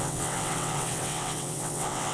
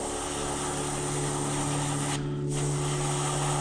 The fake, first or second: first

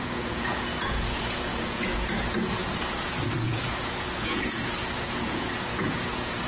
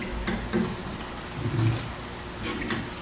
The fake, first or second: first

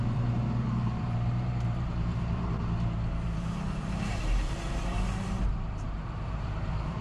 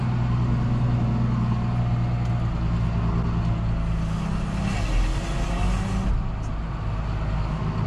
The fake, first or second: first